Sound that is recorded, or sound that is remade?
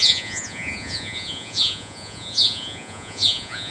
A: remade